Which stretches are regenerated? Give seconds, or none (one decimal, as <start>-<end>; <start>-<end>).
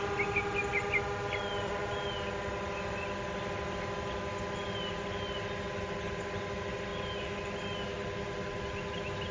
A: none